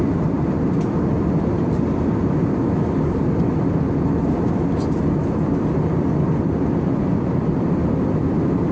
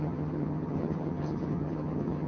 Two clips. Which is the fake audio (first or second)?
second